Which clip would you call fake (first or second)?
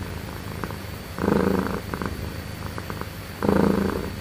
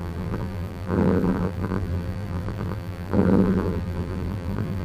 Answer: second